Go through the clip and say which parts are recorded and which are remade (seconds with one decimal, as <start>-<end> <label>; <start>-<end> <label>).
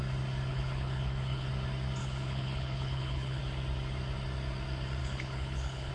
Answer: 0.0-0.5 recorded; 0.5-1.5 remade; 1.5-2.0 recorded; 2.0-3.4 remade; 3.4-5.0 recorded; 5.0-5.9 remade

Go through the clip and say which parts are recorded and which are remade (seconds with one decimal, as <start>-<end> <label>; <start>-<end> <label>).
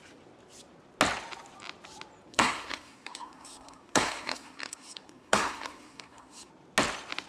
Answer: 0.0-2.3 recorded; 2.3-6.5 remade; 6.5-7.3 recorded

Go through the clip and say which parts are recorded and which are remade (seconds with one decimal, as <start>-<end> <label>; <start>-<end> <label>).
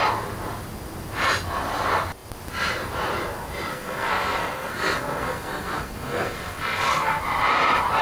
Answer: 0.0-3.7 recorded; 3.7-7.2 remade; 7.2-8.0 recorded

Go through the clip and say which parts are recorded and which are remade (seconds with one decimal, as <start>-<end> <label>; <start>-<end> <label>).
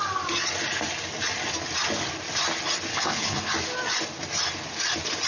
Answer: 0.0-2.9 recorded; 2.9-3.5 remade; 3.5-5.3 recorded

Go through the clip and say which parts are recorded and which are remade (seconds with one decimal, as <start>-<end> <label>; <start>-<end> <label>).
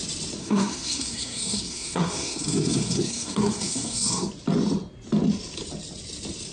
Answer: 0.0-0.4 recorded; 0.4-4.3 remade; 4.3-6.5 recorded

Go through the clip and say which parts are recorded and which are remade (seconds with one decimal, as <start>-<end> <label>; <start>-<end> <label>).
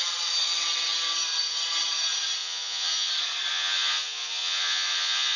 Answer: 0.0-2.4 recorded; 2.4-3.1 remade; 3.1-3.5 recorded; 3.5-5.4 remade